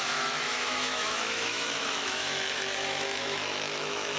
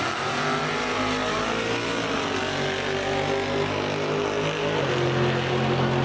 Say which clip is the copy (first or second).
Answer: first